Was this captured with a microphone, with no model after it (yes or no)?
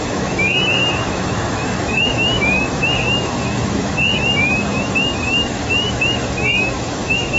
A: no